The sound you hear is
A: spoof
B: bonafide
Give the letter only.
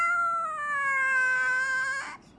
B